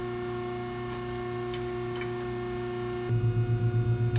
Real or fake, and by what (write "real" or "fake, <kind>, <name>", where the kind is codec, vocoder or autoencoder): real